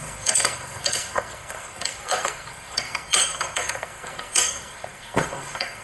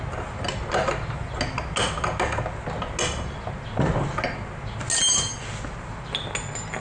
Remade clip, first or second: first